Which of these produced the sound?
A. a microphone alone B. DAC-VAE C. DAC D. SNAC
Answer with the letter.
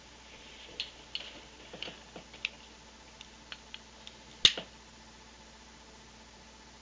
A